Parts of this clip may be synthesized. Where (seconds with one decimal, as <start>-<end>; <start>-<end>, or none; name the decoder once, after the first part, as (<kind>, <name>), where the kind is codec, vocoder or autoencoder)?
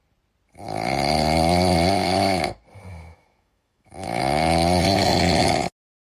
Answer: 2.0-2.5 (autoencoder, DAC-VAE); 2.9-4.2